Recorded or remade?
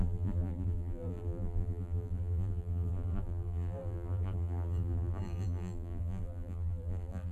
remade